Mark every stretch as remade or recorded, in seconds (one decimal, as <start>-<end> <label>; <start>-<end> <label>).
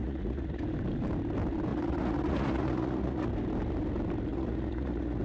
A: 0.0-0.6 remade; 0.6-1.7 recorded; 1.7-3.3 remade; 3.3-4.3 recorded; 4.3-5.2 remade